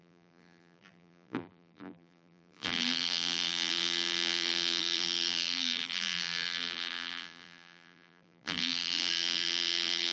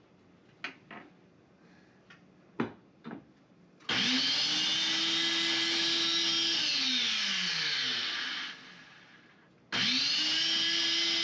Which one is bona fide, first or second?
second